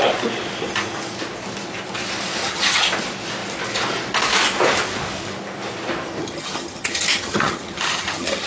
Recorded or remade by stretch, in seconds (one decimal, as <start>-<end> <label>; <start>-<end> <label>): 0.0-2.4 recorded; 2.4-2.9 remade; 2.9-6.2 recorded; 6.2-8.5 remade